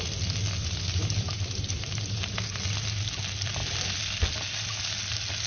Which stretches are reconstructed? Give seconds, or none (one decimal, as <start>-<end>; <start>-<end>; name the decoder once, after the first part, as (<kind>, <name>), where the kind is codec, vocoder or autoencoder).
0.6-2.3 (vocoder, BigVGAN v2)